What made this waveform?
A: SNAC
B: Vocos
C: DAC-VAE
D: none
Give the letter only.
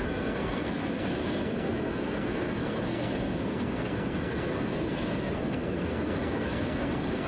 A